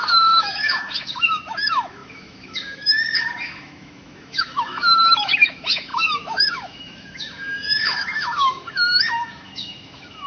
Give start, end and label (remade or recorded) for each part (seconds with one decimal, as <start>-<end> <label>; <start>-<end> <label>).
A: 0.0-10.3 remade